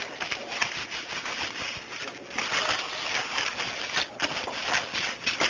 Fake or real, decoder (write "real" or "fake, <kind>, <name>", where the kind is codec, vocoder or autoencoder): real